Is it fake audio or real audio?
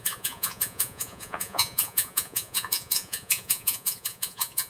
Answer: fake